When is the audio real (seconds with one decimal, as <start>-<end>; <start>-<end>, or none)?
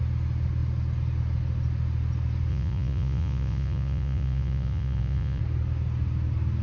0.0-2.5; 5.4-6.6